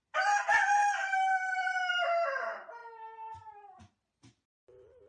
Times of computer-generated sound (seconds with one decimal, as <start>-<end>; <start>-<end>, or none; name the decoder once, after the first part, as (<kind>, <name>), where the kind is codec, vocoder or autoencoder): none

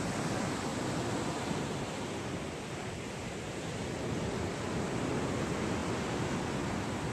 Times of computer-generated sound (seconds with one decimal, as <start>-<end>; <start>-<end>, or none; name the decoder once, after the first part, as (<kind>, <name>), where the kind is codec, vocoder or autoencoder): none